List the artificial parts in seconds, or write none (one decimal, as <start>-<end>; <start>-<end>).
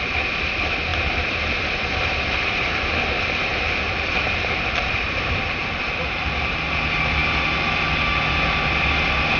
3.5-6.6